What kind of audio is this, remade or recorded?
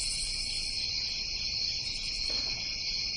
remade